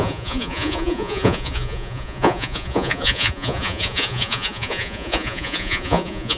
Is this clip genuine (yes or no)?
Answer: no